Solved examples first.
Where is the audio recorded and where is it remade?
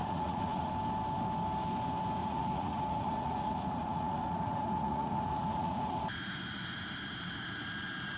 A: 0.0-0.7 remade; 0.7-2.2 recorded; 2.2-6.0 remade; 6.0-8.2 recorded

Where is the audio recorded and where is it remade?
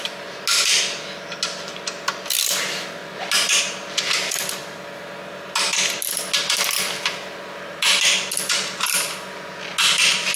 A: 0.0-10.4 recorded